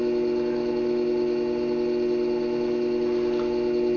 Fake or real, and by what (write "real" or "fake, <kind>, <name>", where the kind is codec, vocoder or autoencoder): real